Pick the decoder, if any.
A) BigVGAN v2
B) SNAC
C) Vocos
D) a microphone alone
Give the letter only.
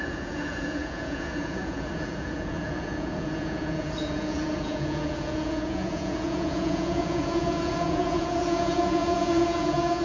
C